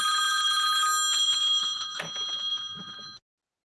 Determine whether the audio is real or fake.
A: real